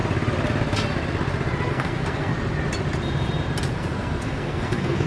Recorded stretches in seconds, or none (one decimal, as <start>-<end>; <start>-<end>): 0.0-1.7; 2.3-3.7

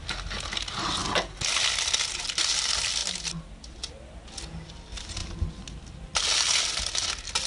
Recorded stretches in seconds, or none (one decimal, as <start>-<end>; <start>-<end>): 0.0-7.5

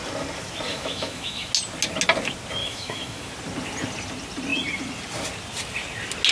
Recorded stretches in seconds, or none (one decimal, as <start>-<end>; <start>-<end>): 0.0-0.7; 1.5-2.6; 3.3-6.3

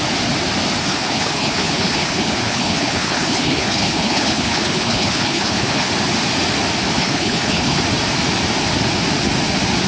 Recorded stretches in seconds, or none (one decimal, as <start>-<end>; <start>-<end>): 0.0-0.8; 5.9-7.0; 7.8-9.9